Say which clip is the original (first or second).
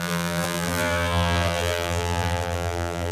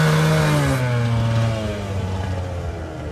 second